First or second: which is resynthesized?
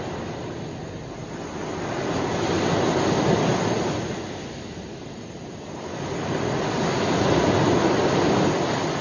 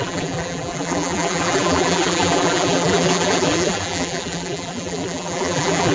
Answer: second